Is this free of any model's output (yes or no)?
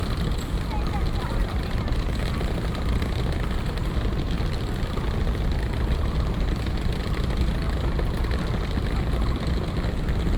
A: yes